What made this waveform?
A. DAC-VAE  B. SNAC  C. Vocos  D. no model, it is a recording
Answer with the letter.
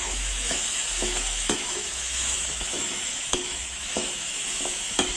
A